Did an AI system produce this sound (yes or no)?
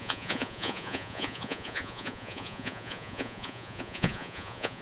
yes